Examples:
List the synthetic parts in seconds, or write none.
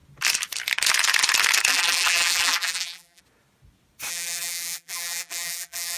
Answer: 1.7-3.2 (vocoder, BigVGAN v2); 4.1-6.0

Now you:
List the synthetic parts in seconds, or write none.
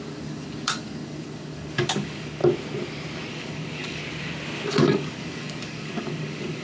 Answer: 0.0-2.4 (codec, DAC); 3.3-4.0; 4.7-6.6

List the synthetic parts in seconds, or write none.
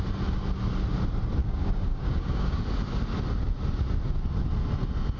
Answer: 1.4-2.6 (codec, DAC)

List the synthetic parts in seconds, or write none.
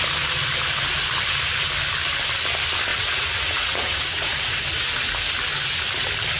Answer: 2.9-4.6 (vocoder, Vocos)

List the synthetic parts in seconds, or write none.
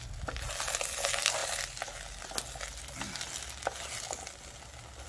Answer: none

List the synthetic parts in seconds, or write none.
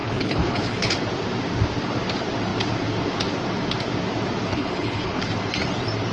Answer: 0.0-0.9 (codec, HILCodec); 4.5-5.2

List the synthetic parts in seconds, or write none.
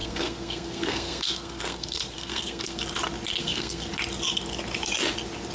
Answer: 0.0-2.8 (codec, SNAC); 3.4-3.9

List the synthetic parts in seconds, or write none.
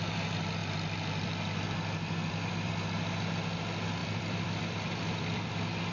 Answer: 0.6-2.7 (vocoder, BigVGAN v2); 4.0-5.5